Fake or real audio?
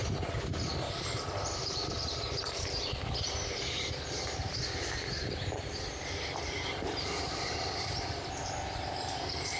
fake